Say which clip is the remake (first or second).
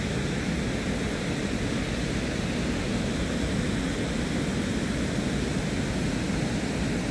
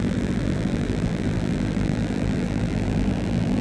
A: second